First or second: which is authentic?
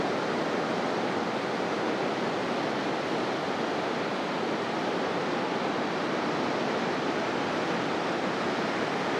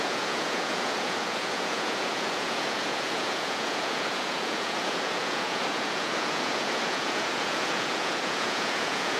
first